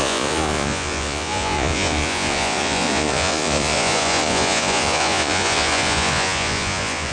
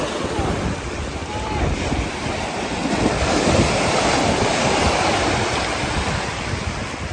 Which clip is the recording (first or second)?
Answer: second